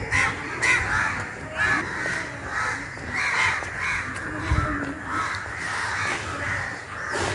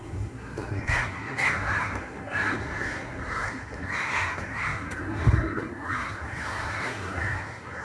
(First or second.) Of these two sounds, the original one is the first